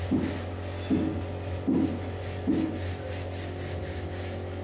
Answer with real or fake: real